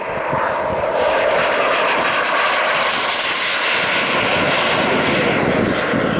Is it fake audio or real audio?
real